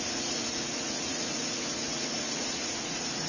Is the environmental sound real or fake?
fake